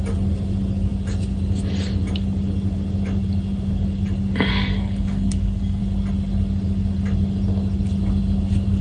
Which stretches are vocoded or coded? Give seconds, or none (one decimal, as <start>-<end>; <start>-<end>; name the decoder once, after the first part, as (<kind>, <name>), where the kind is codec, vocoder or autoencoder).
4.5-5.8 (codec, SNAC)